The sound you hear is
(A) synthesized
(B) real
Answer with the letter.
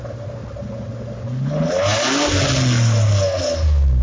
B